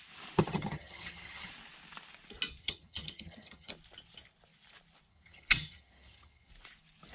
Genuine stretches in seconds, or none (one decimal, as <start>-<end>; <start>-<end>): 0.0-0.4; 1.5-2.6; 3.7-5.1; 6.5-7.1